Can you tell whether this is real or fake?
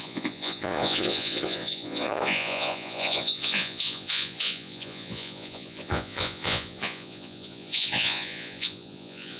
fake